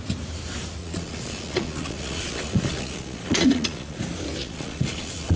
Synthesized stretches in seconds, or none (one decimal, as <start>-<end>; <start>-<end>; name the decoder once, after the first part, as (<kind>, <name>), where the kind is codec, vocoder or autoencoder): 0.8-4.0 (vocoder, Vocos); 4.4-5.4